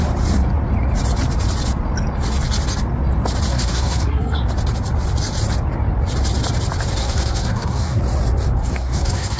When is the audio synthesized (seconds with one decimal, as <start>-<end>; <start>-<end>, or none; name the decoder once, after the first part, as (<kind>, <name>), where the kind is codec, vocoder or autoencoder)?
3.5-4.4 (codec, SNAC); 7.0-8.0; 8.6-9.4